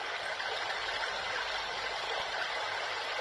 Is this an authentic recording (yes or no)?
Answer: yes